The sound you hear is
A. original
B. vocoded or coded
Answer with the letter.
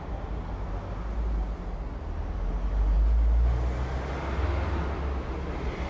A